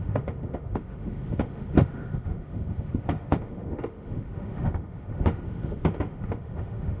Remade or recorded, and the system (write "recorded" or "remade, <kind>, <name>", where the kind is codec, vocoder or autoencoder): remade, autoencoder, DAC-VAE